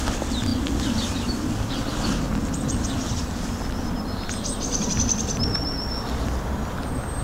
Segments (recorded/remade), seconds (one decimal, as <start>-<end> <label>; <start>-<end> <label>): 0.0-7.2 recorded

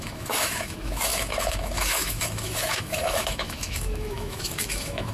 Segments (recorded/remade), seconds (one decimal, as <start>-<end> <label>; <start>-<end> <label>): 0.0-5.1 remade